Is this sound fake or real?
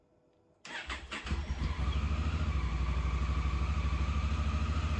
real